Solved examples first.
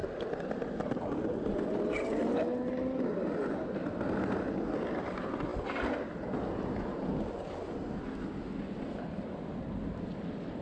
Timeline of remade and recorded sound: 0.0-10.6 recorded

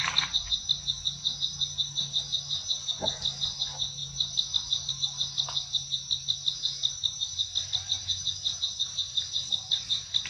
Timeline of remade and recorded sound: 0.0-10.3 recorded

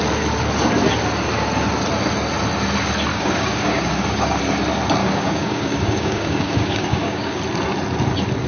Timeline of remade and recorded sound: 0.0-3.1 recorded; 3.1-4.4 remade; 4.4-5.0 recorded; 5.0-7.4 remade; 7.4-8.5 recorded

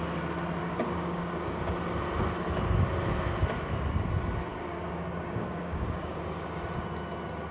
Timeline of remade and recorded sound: 0.0-0.6 recorded; 0.6-1.6 remade; 1.6-4.5 recorded; 4.5-6.2 remade; 6.2-7.5 recorded